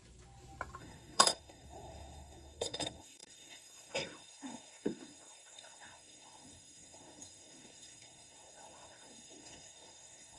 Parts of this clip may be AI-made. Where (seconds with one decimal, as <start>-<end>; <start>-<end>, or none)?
0.8-10.4